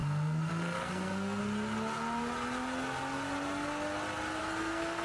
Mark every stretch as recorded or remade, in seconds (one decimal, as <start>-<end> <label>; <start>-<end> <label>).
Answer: 0.0-1.4 remade; 1.4-4.4 recorded; 4.4-5.0 remade